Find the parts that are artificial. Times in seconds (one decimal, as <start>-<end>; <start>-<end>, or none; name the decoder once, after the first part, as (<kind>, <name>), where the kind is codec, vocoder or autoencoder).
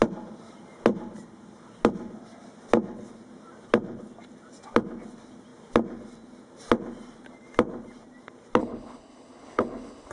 8.6-10.1 (codec, HILCodec)